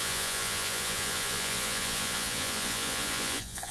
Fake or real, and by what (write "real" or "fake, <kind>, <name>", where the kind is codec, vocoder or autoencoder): fake, vocoder, Vocos